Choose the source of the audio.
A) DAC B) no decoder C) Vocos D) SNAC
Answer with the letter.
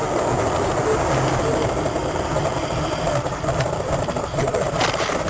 B